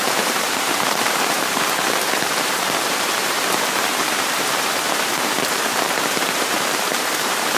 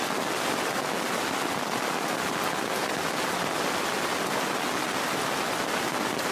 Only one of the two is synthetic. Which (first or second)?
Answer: first